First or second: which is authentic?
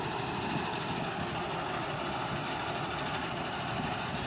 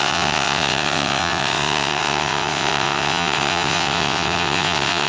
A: first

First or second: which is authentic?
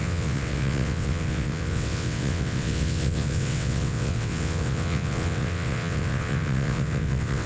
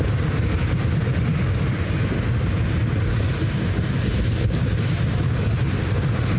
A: second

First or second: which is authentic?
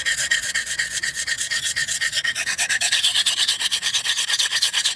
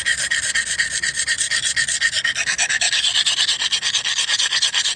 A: second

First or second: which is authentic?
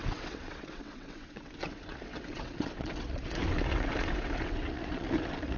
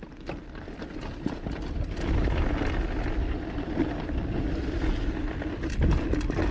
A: second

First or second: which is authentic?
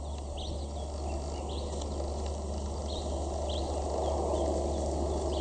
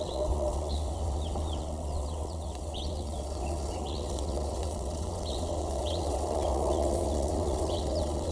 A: first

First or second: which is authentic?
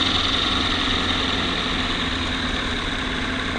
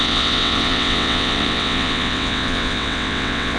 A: first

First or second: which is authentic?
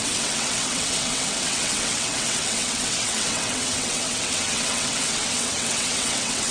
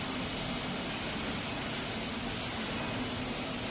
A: second